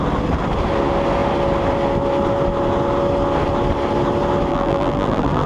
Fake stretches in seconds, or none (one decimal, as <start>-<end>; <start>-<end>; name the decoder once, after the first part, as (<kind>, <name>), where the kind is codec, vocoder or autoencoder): 4.5-5.5 (vocoder, BigVGAN v2)